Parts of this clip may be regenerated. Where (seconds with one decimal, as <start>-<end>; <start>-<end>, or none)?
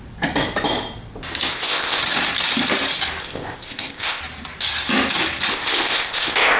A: 1.5-2.0; 3.2-4.2; 5.5-6.6